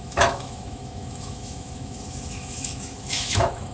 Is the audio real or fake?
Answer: fake